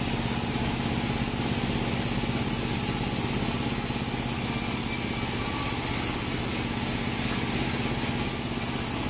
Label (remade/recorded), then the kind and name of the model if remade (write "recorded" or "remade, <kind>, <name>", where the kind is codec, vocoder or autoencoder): recorded